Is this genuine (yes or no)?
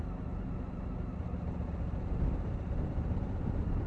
yes